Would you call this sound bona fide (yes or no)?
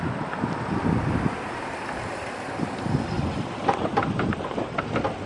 yes